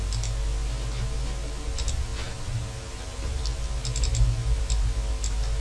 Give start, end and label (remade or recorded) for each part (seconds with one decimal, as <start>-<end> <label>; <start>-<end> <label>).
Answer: 0.0-5.6 recorded